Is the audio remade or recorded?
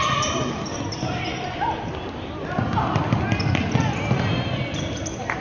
recorded